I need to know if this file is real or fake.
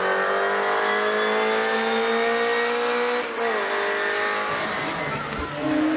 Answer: real